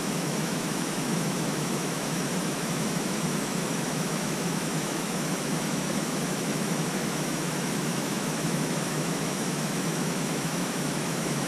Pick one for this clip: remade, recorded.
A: remade